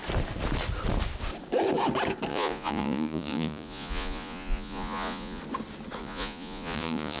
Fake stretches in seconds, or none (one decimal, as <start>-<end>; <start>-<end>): 2.3-5.4; 6.0-7.2

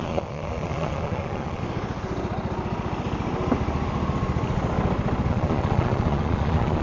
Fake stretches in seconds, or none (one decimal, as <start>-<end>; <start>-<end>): 0.0-1.6; 5.3-6.8

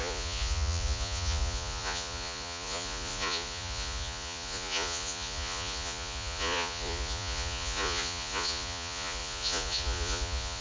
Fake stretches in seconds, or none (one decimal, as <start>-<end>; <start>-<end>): 0.0-10.6

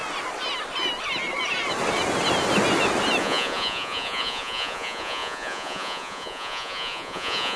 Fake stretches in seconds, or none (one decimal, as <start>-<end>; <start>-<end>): 3.2-7.6